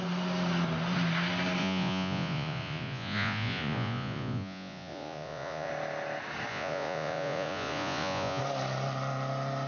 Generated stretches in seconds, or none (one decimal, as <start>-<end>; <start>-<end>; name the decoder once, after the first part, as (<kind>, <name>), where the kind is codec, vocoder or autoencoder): 1.6-5.7 (vocoder, Vocos); 6.5-8.4